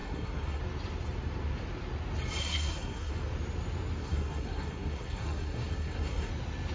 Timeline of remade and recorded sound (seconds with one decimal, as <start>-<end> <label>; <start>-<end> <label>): 0.0-0.6 remade; 0.6-2.4 recorded; 2.4-3.1 remade; 3.1-4.0 recorded; 4.0-6.3 remade; 6.3-6.7 recorded